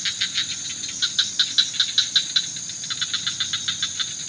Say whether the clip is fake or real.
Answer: real